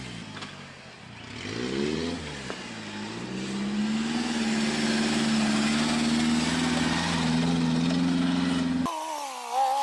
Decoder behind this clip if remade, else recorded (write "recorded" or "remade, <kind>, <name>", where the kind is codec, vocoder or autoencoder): recorded